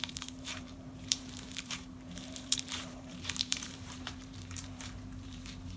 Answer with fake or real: fake